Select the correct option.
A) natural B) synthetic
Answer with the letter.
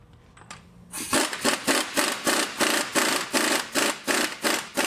A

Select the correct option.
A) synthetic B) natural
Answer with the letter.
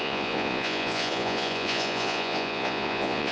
A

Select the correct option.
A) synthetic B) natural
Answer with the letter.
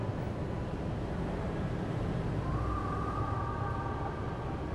B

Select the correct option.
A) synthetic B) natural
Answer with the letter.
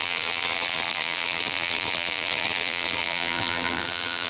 A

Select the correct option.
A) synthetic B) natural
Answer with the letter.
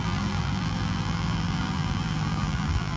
A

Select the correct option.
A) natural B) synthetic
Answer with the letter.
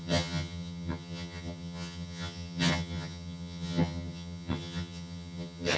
B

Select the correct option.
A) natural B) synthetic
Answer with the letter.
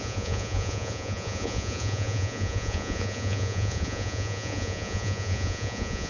B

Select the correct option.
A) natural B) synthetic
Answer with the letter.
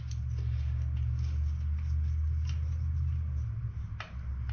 A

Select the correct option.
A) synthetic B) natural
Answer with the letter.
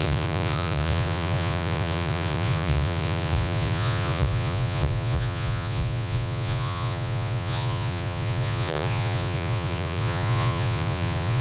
A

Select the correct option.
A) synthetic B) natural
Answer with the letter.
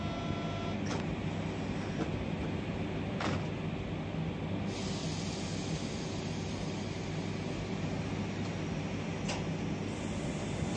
B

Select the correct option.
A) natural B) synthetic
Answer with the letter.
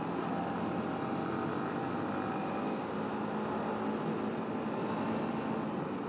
A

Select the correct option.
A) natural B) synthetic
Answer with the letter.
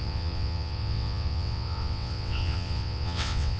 B